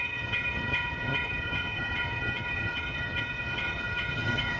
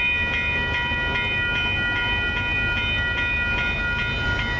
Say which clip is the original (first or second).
second